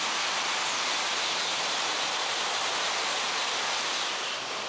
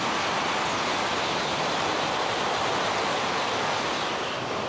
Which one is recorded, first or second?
second